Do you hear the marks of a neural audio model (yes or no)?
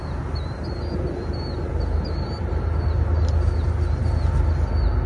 no